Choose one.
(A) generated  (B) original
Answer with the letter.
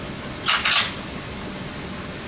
B